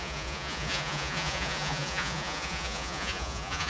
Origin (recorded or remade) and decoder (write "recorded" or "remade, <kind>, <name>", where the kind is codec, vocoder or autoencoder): remade, vocoder, Vocos